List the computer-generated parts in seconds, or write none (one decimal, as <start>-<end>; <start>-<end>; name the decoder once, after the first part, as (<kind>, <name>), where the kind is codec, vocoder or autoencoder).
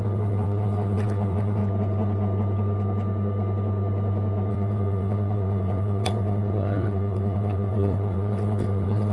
0.0-1.6 (vocoder, WaveNeXt); 4.5-9.1